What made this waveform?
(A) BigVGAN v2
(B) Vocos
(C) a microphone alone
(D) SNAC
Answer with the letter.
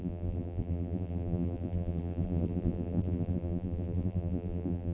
A